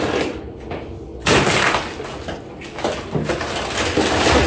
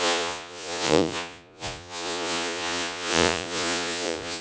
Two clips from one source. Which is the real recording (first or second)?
first